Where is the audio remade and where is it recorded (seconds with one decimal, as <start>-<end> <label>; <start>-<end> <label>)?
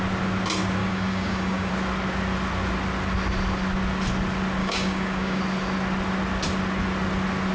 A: 0.0-0.8 recorded; 0.8-1.7 remade; 1.7-4.6 recorded; 4.6-5.4 remade; 5.4-7.5 recorded